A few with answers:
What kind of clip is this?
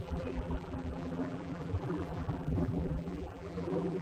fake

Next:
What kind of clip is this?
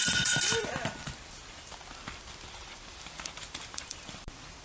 fake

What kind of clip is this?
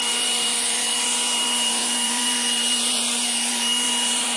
fake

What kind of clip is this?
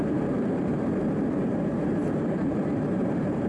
fake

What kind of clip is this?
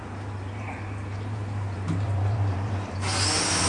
fake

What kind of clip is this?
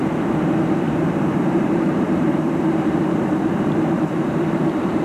fake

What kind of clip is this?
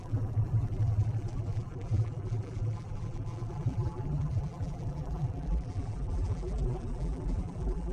fake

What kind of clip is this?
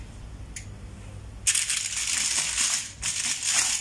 real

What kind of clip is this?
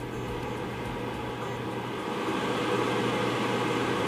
real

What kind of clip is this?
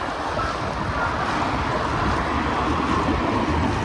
real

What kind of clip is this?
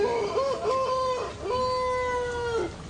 real